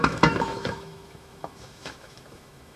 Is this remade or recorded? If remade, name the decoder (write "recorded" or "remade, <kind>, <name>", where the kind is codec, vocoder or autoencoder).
remade, autoencoder, DAC-VAE